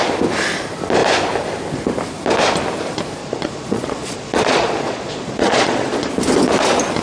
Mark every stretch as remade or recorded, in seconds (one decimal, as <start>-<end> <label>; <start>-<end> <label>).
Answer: 0.0-3.2 recorded; 3.2-6.1 remade; 6.1-7.0 recorded